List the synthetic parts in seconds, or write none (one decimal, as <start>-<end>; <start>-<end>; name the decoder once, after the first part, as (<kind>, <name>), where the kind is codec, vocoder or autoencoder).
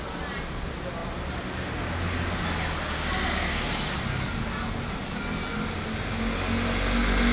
none